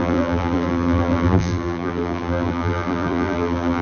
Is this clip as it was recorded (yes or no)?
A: no